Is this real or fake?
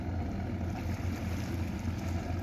real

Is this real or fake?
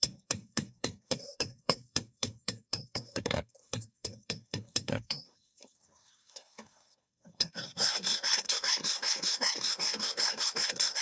fake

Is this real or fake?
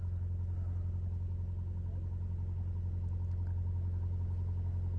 real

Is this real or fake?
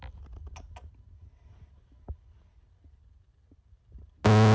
real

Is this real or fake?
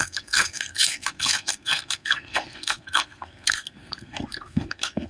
fake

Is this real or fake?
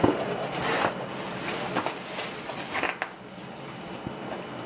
real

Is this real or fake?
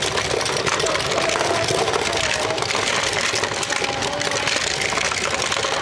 real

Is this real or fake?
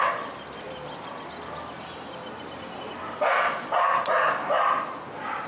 real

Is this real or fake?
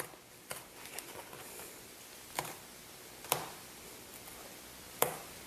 real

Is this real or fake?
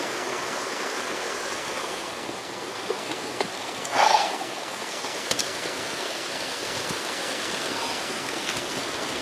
fake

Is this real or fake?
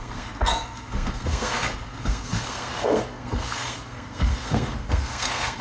fake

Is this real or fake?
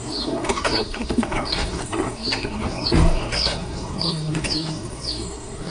fake